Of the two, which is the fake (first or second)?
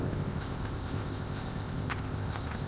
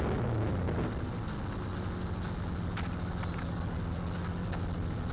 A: first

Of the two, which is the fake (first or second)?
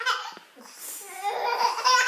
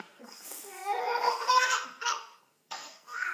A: second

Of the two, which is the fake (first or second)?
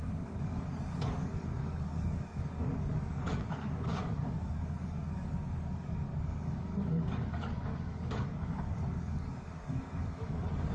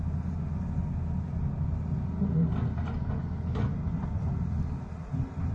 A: first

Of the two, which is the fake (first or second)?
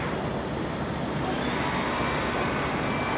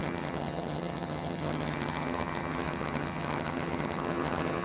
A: second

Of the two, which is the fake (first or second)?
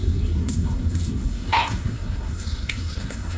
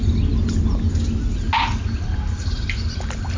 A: first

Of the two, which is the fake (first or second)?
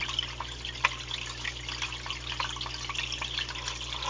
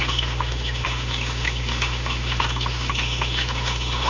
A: second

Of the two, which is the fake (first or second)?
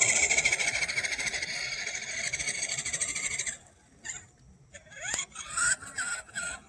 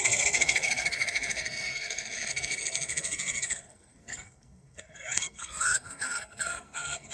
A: second